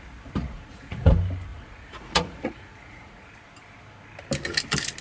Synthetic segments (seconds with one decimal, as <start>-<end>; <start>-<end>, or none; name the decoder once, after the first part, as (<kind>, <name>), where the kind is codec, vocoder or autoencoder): 0.4-1.1 (vocoder, Vocos); 1.5-3.3